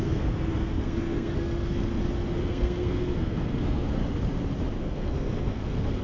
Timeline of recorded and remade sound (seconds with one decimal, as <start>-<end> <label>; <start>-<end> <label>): 0.0-2.0 remade; 2.0-2.5 recorded; 2.5-4.0 remade; 4.0-4.8 recorded; 4.8-6.0 remade